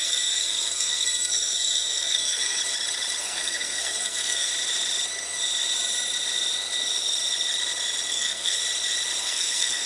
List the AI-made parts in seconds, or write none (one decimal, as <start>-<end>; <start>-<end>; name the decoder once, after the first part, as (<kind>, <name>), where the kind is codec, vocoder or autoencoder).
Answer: 0.0-2.6 (codec, SNAC); 3.2-4.5; 8.1-8.6; 9.2-9.9